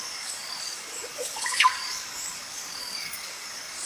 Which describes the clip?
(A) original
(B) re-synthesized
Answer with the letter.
B